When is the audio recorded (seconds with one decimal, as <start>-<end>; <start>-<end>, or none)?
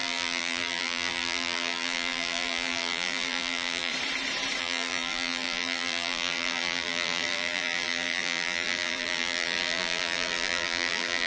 3.9-4.6